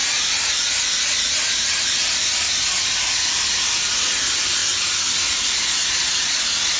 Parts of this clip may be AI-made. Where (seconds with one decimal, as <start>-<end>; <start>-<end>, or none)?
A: none

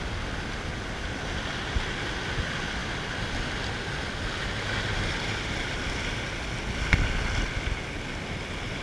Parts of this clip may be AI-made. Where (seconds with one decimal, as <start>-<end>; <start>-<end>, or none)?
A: none

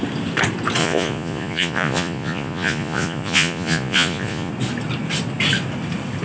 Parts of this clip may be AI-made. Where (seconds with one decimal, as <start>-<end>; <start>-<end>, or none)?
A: 0.8-4.5

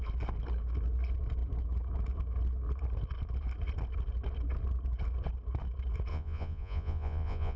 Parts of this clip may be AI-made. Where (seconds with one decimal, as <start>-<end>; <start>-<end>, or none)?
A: 6.1-7.6

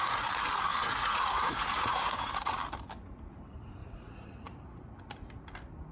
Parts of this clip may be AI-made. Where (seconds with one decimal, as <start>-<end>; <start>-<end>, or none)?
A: 0.7-2.6; 3.8-4.9

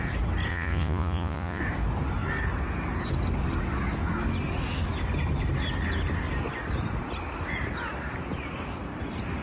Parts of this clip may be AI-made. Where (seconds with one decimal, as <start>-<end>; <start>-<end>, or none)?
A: 0.5-1.6